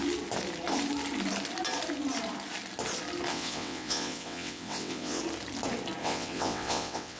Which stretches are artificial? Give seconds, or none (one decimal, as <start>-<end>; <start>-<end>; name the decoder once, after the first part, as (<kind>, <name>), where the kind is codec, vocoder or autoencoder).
3.3-5.2 (vocoder, WaveNeXt); 6.0-7.2